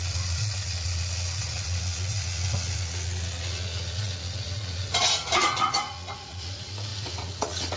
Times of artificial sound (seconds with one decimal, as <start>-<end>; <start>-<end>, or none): 0.0-7.8